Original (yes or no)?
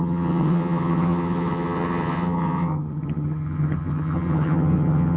no